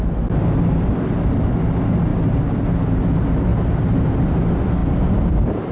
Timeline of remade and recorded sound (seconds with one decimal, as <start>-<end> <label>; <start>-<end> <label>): 0.0-2.1 recorded; 2.1-3.0 remade; 3.0-3.5 recorded; 3.5-4.2 remade; 4.2-4.8 recorded; 4.8-5.7 remade